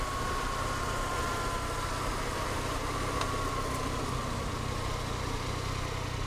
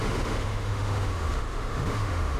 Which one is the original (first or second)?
first